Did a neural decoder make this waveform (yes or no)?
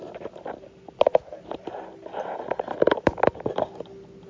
no